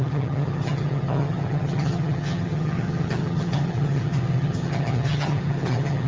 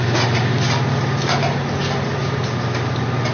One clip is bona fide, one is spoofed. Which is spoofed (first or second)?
first